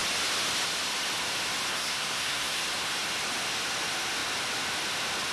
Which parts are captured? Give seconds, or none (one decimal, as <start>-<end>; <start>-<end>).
0.0-1.7; 2.6-5.3